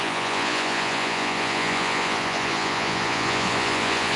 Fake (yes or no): yes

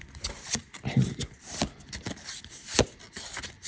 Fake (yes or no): no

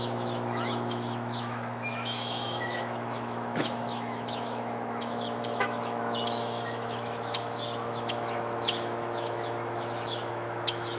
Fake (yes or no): yes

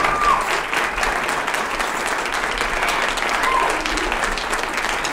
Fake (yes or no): no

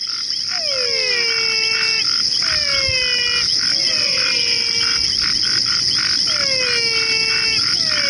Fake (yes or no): no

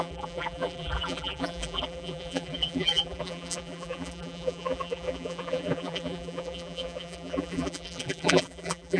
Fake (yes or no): yes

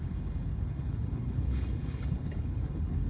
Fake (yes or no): yes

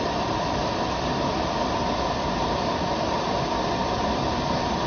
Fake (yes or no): yes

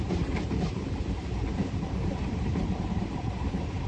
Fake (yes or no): yes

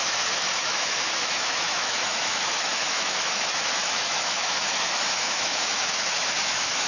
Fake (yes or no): yes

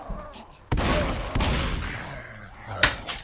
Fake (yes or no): no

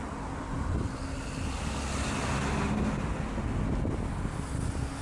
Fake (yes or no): no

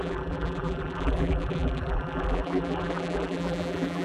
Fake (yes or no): yes